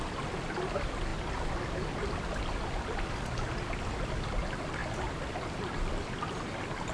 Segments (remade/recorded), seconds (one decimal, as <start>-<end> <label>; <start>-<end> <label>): 0.0-6.9 recorded